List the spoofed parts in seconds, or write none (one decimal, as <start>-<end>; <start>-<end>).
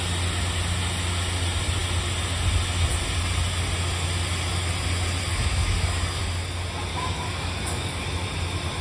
5.3-6.2; 6.9-8.0